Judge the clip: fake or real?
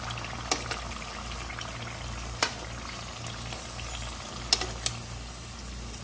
real